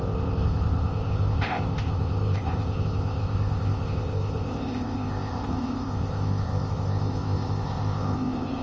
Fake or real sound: fake